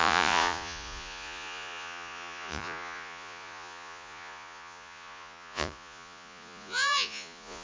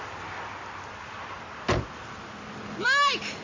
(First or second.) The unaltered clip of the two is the second